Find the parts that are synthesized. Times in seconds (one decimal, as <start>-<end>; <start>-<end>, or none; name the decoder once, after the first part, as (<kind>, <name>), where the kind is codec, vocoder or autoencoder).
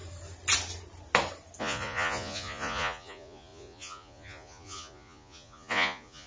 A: 1.6-6.3 (vocoder, Vocos)